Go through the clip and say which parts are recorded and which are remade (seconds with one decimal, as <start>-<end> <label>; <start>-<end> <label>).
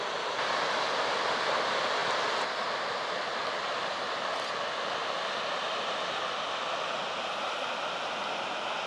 0.0-8.9 remade